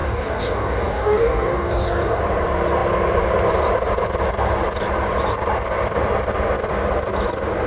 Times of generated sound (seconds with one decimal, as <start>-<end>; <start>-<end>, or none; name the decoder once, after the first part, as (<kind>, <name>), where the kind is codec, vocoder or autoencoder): 0.0-2.2 (codec, DAC)